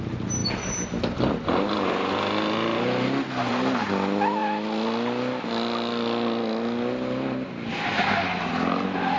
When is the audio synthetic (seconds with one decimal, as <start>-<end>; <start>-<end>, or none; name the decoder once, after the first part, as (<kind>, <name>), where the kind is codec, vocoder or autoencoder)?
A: none